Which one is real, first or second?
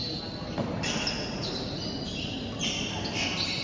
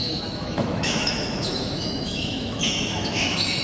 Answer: first